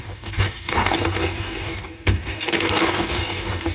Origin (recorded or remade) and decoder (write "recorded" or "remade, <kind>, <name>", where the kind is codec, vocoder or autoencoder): remade, codec, DAC